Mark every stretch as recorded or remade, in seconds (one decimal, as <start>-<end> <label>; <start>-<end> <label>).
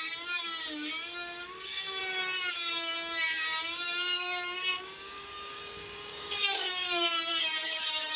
0.0-2.0 remade; 2.0-2.5 recorded; 2.5-8.2 remade